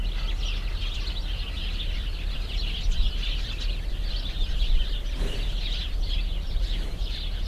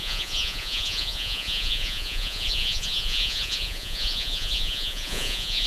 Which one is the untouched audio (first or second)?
first